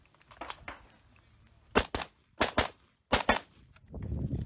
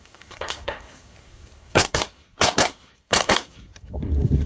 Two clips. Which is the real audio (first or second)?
first